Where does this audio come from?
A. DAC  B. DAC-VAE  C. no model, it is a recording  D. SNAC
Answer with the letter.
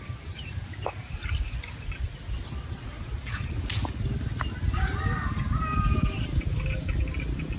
C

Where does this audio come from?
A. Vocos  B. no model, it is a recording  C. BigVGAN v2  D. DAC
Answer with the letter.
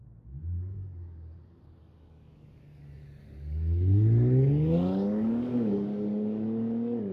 D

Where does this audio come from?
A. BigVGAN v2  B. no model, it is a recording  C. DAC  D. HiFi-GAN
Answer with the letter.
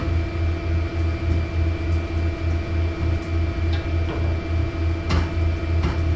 B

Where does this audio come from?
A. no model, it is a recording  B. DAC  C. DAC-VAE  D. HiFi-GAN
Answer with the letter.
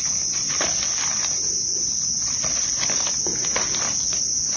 A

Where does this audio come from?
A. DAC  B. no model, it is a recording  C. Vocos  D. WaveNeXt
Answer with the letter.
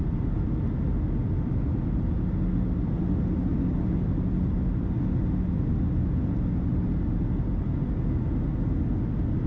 B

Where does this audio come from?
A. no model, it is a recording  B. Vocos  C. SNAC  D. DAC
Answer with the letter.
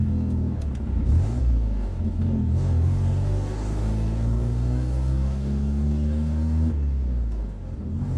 D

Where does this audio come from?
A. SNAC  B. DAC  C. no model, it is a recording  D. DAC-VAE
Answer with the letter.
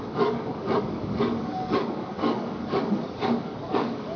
B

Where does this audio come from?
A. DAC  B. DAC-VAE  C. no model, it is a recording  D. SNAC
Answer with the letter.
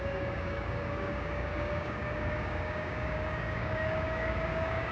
A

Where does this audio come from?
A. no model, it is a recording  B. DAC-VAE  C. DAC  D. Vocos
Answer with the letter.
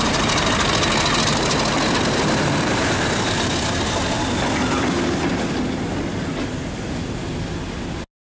A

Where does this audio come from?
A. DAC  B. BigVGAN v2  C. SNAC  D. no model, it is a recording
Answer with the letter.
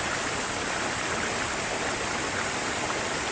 D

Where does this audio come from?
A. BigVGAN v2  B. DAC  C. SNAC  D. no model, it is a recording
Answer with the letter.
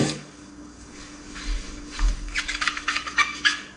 B